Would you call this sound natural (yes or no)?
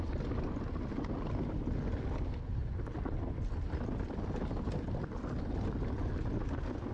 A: yes